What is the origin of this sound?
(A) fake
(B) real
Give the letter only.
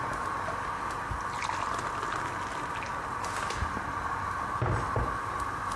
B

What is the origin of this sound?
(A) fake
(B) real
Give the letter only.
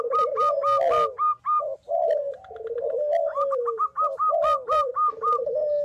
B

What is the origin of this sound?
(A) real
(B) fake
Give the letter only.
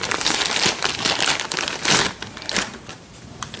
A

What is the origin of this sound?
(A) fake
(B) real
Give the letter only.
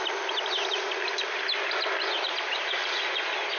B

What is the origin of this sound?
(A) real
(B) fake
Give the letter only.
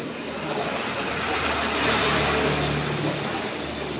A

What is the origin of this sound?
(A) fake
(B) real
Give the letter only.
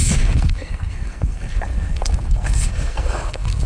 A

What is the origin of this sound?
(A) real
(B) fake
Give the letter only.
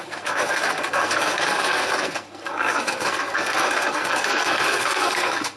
B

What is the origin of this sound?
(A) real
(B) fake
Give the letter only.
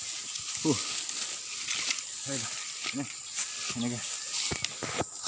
A